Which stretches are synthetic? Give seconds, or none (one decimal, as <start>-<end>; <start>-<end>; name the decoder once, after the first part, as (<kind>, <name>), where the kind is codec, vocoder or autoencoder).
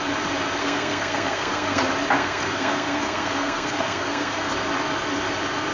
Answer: 0.6-1.8 (codec, SNAC); 2.2-4.5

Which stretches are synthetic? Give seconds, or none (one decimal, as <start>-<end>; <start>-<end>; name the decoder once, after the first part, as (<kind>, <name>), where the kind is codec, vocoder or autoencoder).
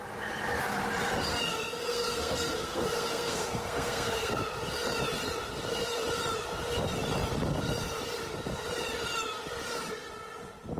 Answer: 1.3-4.3 (codec, SNAC)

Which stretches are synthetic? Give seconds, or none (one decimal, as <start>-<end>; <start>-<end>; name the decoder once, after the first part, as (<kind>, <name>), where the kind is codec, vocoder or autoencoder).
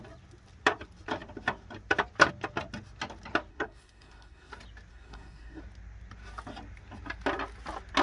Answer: 3.5-4.5 (codec, SNAC); 4.9-5.6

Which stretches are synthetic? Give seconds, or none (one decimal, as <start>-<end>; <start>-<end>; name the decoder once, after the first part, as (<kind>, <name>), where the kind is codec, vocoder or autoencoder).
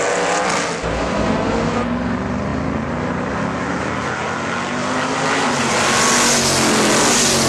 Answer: none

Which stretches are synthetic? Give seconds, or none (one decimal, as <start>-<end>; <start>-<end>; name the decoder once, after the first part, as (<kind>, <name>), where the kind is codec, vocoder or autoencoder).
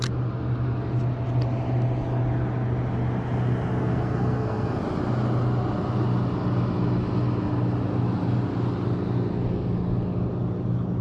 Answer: 3.8-4.8 (codec, SNAC)